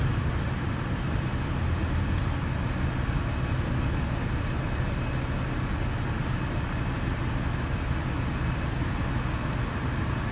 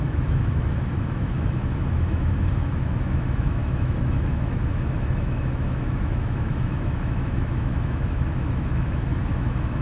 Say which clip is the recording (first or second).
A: first